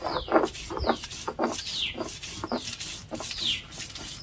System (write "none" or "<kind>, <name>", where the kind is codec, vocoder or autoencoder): none